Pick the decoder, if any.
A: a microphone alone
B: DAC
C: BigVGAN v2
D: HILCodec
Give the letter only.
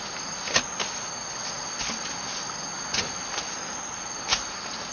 A